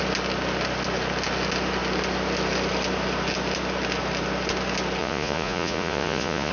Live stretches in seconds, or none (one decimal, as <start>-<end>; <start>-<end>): 0.0-5.0